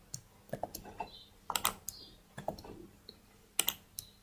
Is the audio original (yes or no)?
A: yes